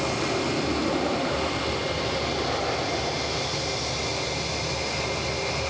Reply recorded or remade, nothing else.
recorded